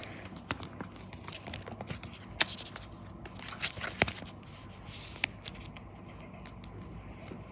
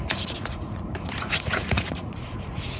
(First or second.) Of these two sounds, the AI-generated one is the second